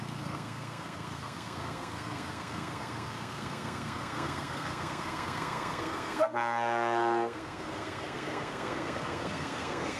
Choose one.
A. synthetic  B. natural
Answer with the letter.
A